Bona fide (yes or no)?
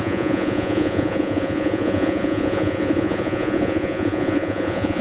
no